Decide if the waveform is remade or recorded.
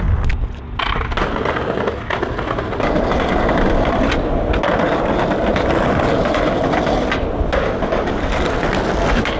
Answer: recorded